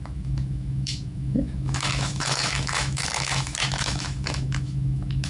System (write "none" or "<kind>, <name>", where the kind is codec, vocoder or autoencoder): autoencoder, DAC-VAE